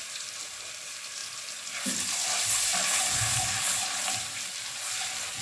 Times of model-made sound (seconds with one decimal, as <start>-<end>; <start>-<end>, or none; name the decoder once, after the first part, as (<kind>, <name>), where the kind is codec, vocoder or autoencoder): 0.0-5.4 (vocoder, BigVGAN v2)